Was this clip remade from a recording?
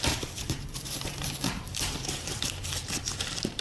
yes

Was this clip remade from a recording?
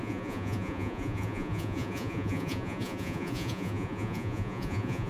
yes